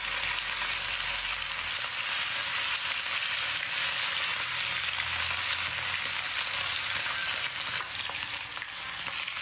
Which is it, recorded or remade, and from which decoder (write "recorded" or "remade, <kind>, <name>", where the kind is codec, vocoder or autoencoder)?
recorded